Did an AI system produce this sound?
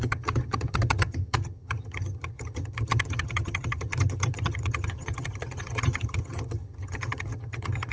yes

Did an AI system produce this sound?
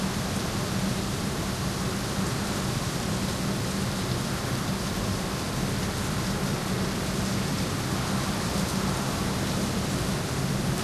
no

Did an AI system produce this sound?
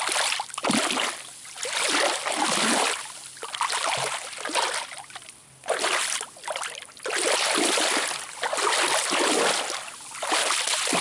no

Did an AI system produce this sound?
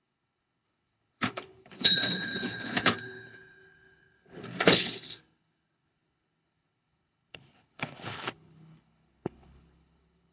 yes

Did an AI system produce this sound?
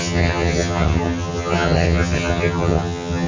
yes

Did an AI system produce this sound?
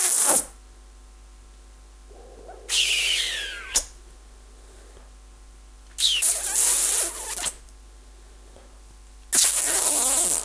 no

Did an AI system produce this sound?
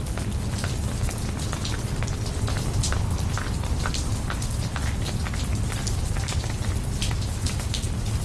no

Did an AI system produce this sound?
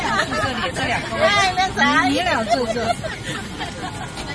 no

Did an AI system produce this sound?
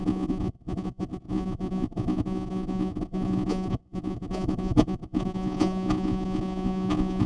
yes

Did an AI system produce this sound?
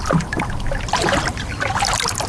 no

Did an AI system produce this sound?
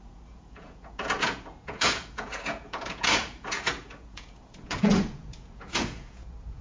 yes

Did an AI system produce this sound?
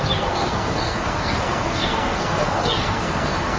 yes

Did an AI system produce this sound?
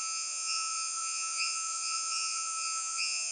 yes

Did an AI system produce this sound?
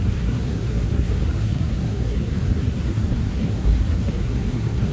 yes